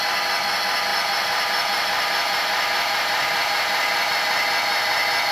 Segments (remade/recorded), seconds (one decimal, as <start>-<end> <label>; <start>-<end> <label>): 0.0-0.9 recorded; 0.9-4.1 remade; 4.1-5.3 recorded